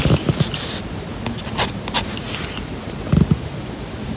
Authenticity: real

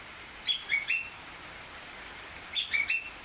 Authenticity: real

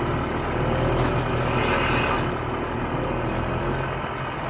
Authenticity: real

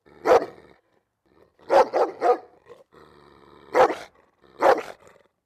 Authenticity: real